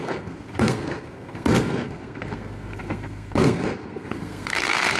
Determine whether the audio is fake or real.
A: fake